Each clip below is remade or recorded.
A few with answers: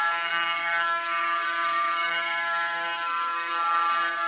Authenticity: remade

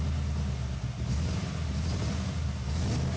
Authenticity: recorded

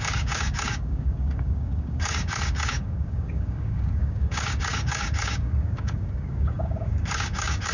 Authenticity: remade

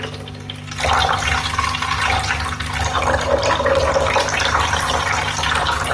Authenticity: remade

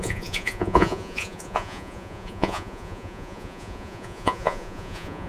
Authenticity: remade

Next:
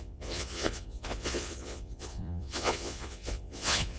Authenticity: remade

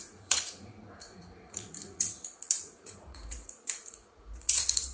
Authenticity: remade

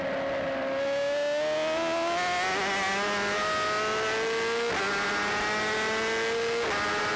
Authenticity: recorded